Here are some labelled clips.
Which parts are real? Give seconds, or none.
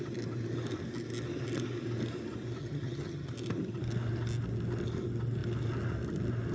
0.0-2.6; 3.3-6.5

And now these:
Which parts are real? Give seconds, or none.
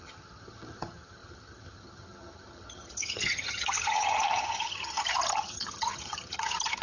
none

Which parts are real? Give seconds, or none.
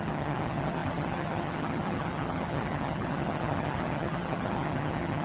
none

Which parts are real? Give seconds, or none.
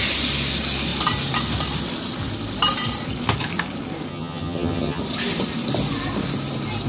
0.0-4.1; 5.0-6.9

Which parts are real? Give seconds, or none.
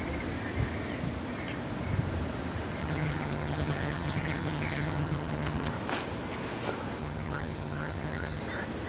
0.0-2.8; 5.7-7.0; 8.4-8.9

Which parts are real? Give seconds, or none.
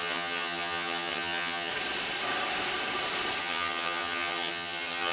1.7-3.4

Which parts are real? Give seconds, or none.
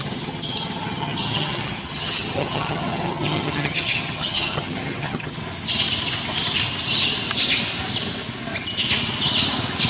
5.4-9.9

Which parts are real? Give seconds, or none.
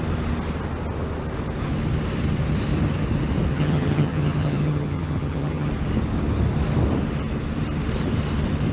0.0-3.5; 5.7-8.7